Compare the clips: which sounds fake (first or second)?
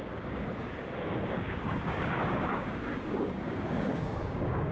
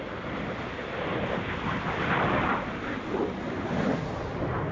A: first